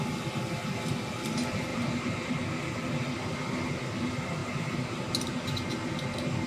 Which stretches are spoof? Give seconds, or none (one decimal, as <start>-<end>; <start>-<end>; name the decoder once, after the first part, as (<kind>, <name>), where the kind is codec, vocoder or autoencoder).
1.7-2.3 (vocoder, BigVGAN v2); 4.4-5.1